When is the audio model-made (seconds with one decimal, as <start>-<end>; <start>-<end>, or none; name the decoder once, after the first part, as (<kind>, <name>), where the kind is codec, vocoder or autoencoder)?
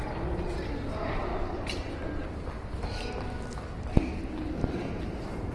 none